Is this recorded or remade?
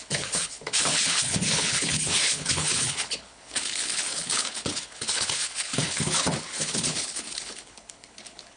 remade